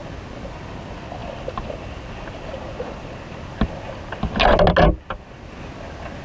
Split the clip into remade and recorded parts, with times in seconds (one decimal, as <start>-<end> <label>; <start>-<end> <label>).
0.0-6.2 recorded